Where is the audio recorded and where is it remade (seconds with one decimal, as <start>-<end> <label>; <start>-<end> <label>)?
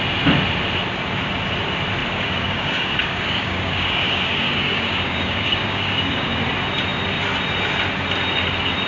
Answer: 0.0-2.1 recorded; 2.1-6.4 remade; 6.4-8.9 recorded